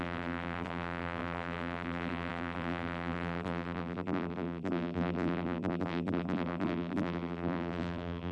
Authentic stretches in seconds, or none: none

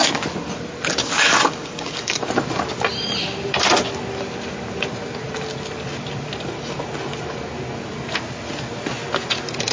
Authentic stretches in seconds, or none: 0.0-1.0; 2.3-9.7

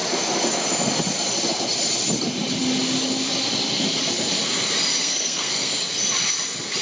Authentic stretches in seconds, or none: 0.0-5.0; 5.7-6.8

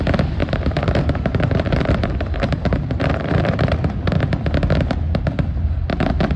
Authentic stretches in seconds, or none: 0.0-0.4; 4.2-6.4